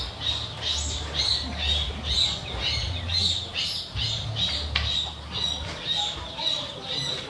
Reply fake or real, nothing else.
real